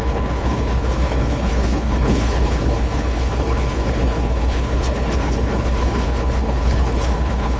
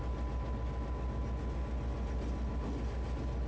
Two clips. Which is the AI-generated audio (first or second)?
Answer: first